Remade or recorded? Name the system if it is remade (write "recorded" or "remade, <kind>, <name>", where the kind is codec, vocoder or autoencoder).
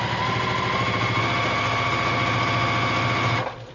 recorded